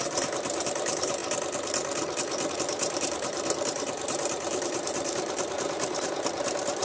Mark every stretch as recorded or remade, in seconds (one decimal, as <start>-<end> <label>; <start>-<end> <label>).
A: 0.0-1.2 remade; 1.2-2.5 recorded; 2.5-6.8 remade